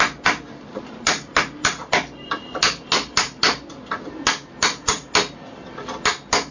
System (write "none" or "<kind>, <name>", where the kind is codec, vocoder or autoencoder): none